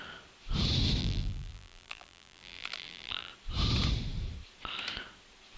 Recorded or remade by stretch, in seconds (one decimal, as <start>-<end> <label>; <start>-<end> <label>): 0.0-1.0 recorded; 1.0-3.3 remade; 3.3-5.6 recorded